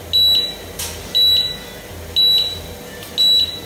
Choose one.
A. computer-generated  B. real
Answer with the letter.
B